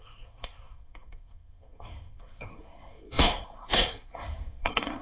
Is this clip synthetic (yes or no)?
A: yes